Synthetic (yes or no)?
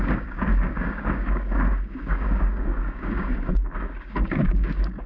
yes